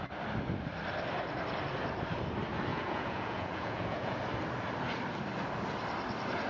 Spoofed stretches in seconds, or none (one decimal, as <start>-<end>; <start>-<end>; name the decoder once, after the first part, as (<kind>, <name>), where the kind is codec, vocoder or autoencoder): 2.7-4.2 (vocoder, Vocos)